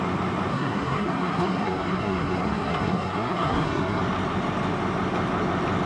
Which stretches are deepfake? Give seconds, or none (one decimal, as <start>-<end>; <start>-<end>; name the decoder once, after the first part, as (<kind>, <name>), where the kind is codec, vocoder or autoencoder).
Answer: 0.5-4.0 (codec, SNAC)